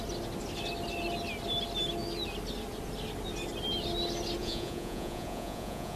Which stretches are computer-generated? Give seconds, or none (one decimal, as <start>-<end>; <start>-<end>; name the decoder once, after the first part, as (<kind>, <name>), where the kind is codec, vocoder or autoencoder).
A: 4.4-6.0 (vocoder, Vocos)